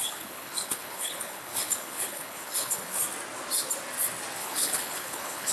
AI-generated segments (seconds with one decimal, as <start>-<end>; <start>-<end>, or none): 0.0-3.0; 4.4-5.5

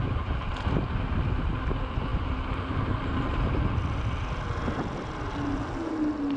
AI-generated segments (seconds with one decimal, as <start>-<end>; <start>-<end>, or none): none

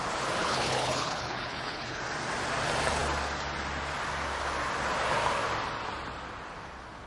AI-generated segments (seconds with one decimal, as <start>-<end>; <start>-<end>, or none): 0.4-2.0

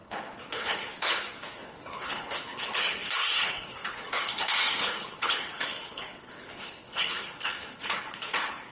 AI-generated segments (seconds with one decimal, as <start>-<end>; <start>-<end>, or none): 0.0-8.7

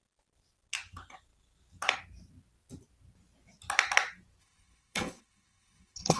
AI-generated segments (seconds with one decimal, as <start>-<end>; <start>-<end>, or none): 4.4-6.2